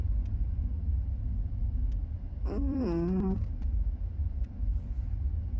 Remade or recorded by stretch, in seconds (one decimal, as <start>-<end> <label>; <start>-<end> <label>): 0.0-2.0 recorded; 2.0-2.8 remade; 2.8-5.6 recorded